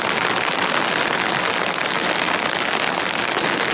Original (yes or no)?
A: yes